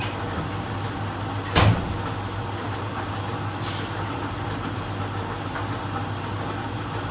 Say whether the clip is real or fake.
real